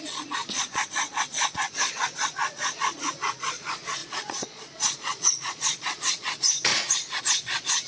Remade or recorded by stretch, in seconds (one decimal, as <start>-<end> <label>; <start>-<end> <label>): 0.0-6.7 remade; 6.7-7.2 recorded; 7.2-7.9 remade

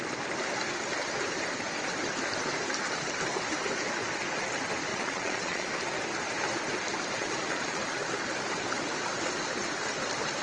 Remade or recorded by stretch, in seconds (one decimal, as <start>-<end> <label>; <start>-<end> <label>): 0.0-4.9 recorded; 4.9-5.7 remade; 5.7-7.2 recorded; 7.2-7.8 remade; 7.8-10.4 recorded

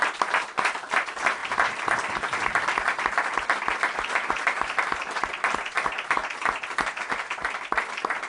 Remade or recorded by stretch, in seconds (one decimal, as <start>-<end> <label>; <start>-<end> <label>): 0.0-8.3 recorded

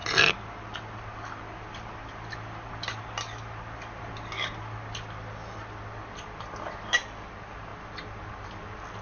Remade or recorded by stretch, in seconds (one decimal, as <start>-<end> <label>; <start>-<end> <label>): 0.0-9.0 recorded

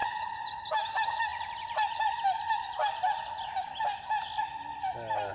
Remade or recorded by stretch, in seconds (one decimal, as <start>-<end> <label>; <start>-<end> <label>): 0.0-0.7 remade; 0.7-5.3 recorded

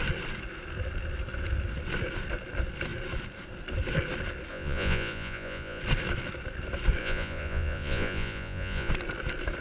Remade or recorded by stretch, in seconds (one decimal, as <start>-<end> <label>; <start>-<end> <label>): 0.0-4.5 recorded; 4.5-5.8 remade; 5.8-7.0 recorded; 7.0-8.9 remade; 8.9-9.6 recorded